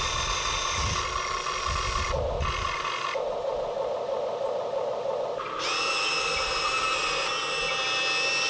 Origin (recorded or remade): recorded